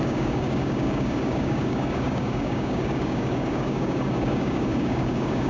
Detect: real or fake fake